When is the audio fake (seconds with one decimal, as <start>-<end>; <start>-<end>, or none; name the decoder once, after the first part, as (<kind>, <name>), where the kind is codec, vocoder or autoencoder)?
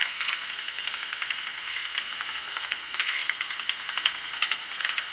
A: 0.0-5.1 (codec, SNAC)